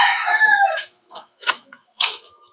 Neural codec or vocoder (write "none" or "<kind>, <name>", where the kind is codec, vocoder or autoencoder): autoencoder, DAC-VAE